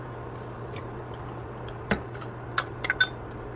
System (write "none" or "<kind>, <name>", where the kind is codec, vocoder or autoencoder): none